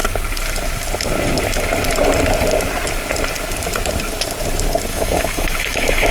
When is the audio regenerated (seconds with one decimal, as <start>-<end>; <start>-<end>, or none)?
4.9-6.1

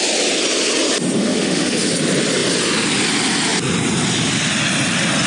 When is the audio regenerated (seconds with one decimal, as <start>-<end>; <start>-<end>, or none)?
1.2-1.9

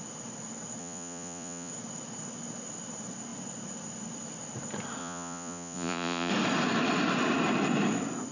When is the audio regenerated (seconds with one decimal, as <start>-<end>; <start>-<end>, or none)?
0.8-1.7; 5.0-6.3

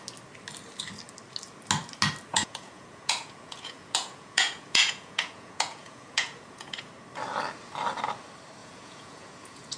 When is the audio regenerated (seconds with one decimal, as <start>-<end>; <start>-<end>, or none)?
2.3-6.9; 8.6-9.8

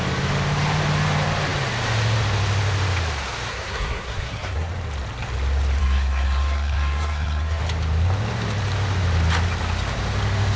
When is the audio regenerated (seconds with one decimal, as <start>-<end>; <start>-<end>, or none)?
3.5-4.7; 5.8-7.6

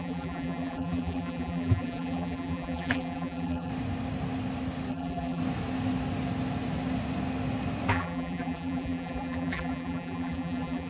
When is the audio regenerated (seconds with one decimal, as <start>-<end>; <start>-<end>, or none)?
0.0-3.7; 4.9-5.4; 7.9-10.9

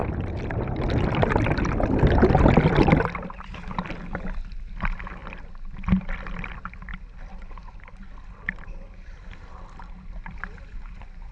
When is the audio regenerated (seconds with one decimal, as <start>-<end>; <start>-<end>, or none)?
5.2-6.0

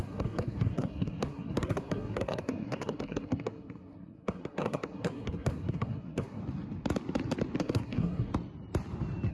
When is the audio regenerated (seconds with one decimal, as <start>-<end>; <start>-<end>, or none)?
0.0-6.4; 7.6-8.3